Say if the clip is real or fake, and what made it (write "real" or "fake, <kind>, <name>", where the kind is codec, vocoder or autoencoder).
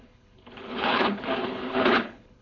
fake, codec, HILCodec